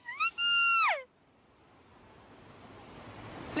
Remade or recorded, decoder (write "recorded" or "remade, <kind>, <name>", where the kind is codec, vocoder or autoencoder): recorded